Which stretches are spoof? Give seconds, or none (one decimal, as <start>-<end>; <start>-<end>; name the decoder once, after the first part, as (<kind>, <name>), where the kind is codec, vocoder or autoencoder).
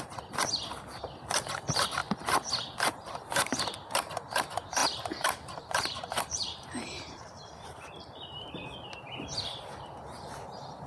4.8-8.5 (vocoder, BigVGAN v2)